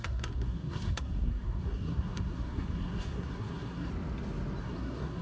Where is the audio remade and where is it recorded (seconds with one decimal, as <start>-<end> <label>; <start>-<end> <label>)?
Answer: 0.0-3.9 remade; 3.9-4.6 recorded; 4.6-5.2 remade